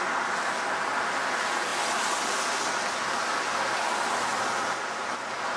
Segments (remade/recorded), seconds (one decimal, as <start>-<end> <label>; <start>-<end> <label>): 0.0-5.6 recorded